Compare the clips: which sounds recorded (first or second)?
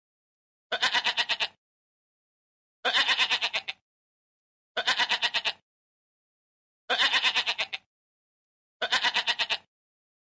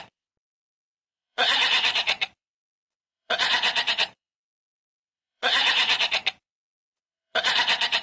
first